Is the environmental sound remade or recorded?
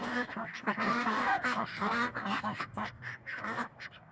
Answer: remade